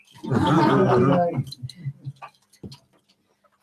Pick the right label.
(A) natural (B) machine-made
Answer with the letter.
A